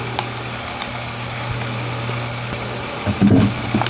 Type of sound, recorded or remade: recorded